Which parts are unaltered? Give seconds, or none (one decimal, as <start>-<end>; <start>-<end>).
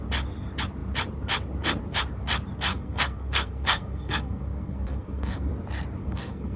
0.0-2.7; 5.5-6.0